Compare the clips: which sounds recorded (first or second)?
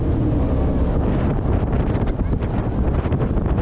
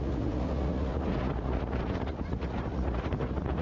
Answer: first